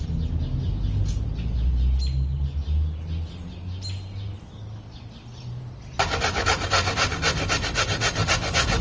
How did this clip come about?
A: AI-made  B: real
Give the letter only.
B